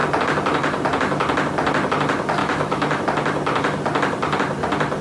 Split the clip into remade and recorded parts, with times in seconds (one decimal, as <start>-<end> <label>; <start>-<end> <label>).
0.0-2.4 recorded; 2.4-3.0 remade; 3.0-5.0 recorded